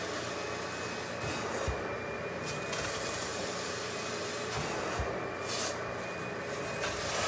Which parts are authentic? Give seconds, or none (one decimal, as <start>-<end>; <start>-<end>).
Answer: 0.0-7.3